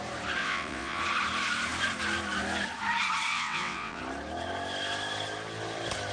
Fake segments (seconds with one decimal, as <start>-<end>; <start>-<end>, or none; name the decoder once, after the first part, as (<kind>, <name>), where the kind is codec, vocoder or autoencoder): 0.4-1.0 (vocoder, WaveNeXt); 3.3-4.0